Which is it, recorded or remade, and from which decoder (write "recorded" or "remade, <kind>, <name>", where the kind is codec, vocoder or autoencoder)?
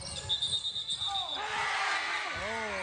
recorded